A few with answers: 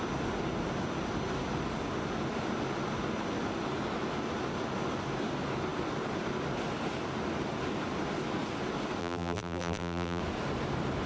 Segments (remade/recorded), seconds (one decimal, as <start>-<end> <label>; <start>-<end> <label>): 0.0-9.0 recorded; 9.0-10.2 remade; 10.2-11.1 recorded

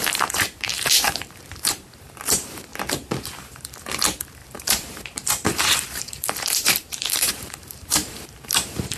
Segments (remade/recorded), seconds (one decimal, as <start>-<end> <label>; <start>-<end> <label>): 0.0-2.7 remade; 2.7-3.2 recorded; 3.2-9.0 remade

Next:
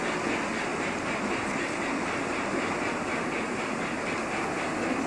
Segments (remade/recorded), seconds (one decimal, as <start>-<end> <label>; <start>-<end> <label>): 0.0-0.7 recorded; 0.7-3.8 remade; 3.8-5.1 recorded

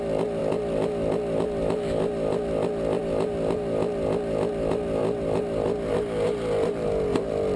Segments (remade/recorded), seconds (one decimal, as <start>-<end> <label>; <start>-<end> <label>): 0.0-7.6 recorded

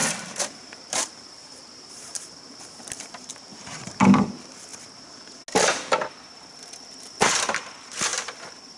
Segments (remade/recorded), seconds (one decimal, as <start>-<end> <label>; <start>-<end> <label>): 0.0-2.6 remade; 2.6-3.5 recorded; 3.5-4.3 remade; 4.3-8.8 recorded